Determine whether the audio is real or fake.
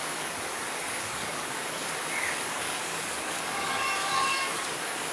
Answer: fake